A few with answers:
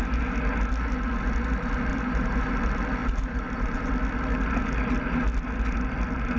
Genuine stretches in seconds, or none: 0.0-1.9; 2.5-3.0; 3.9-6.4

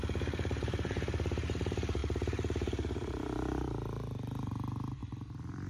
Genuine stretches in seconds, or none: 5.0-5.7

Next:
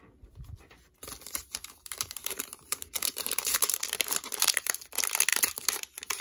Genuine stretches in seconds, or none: 0.0-1.4; 4.8-5.3

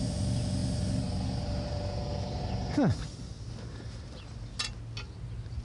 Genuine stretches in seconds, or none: 0.0-5.6

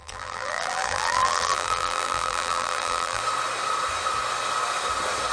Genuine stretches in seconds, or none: 3.2-5.3